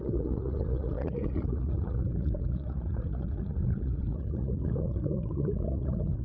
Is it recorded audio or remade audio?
remade